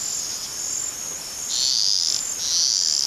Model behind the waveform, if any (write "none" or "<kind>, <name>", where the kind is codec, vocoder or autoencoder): none